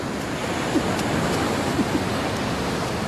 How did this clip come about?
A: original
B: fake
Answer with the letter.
A